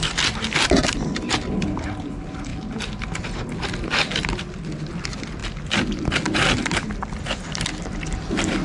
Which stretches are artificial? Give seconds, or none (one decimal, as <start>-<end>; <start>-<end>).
none